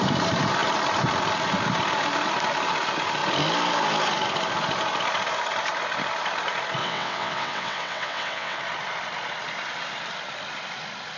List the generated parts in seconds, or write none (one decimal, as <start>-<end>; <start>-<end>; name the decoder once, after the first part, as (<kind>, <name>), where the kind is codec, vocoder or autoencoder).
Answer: 6.8-8.6 (vocoder, WaveNeXt)